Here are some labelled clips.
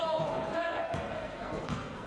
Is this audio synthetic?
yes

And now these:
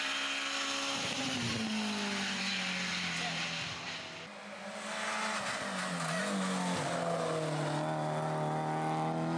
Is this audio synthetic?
no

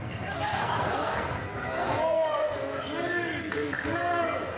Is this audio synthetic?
yes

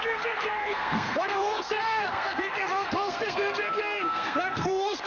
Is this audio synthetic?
yes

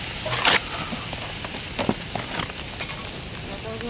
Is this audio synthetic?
no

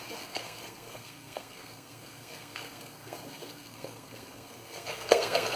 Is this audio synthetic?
yes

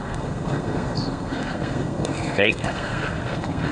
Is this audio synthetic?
yes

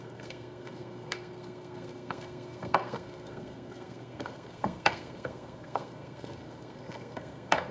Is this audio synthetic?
yes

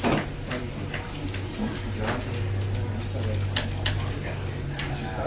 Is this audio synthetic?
no